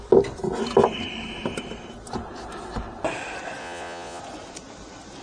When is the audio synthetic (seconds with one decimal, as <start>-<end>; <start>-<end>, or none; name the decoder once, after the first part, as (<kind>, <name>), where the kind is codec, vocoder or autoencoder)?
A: 3.6-4.2 (vocoder, Vocos)